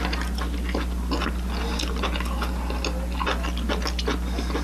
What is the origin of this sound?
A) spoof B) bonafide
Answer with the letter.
B